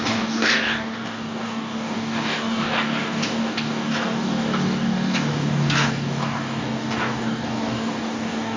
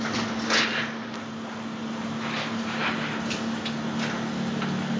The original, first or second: second